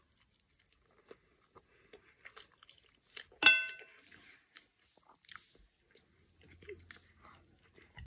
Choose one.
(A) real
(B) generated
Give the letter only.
A